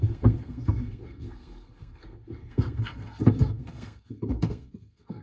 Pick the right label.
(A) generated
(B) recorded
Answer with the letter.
A